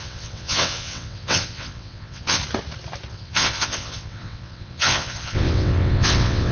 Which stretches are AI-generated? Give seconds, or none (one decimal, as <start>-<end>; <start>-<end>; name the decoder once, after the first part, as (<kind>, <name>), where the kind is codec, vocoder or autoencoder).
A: 0.0-2.4 (vocoder, WaveNeXt); 3.1-6.5